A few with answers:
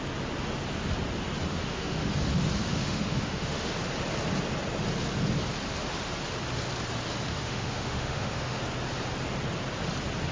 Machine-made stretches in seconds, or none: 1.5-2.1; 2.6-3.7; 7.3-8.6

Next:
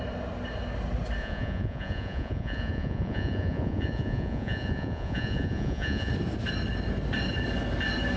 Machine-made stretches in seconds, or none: 1.2-6.1